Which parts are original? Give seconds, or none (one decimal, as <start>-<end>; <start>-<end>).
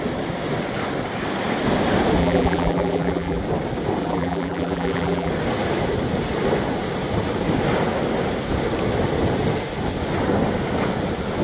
0.0-2.2; 3.4-4.0; 5.3-11.4